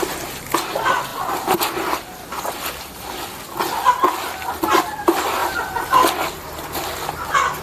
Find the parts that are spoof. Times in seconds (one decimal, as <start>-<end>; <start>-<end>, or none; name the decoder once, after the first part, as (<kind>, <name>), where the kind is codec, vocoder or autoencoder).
5.4-6.0 (vocoder, BigVGAN v2)